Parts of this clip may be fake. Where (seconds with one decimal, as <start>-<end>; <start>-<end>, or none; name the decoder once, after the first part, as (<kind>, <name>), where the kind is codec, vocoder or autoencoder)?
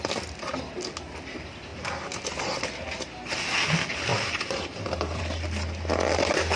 4.1-5.2 (vocoder, BigVGAN v2)